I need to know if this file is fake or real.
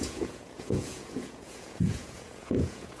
fake